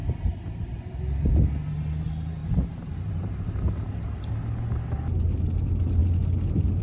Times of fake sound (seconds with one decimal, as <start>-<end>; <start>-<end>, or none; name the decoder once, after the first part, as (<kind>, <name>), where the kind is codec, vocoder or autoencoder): 0.0-1.0 (vocoder, BigVGAN v2); 2.4-4.3